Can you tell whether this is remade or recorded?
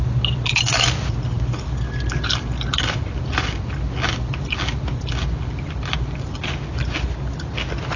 recorded